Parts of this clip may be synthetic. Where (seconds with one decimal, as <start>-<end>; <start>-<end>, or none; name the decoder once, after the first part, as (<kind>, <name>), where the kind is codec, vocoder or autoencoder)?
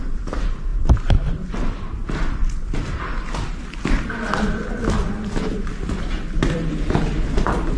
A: 2.0-6.7 (vocoder, BigVGAN v2)